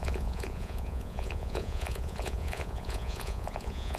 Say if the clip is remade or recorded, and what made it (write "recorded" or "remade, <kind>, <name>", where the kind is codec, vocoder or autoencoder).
remade, vocoder, Vocos